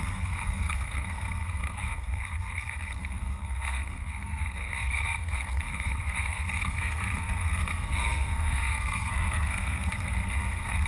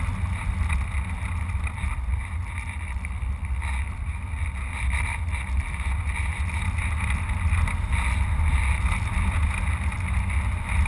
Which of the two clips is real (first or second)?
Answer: second